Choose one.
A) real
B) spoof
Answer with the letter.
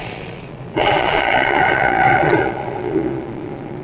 B